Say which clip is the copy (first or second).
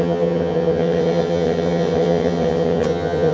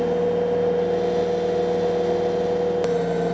first